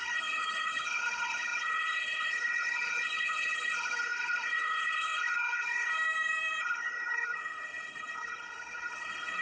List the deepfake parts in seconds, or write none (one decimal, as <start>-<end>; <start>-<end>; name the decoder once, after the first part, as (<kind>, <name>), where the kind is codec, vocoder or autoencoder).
0.0-5.9 (codec, HILCodec); 6.6-9.4